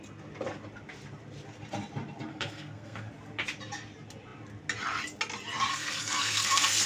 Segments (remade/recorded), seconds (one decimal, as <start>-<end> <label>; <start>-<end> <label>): 0.0-2.3 recorded; 2.3-3.1 remade; 3.1-5.7 recorded; 5.7-6.9 remade